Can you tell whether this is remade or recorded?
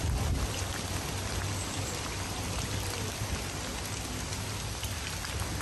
recorded